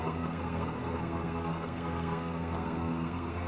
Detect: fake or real fake